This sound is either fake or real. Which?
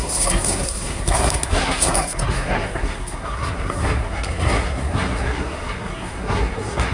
fake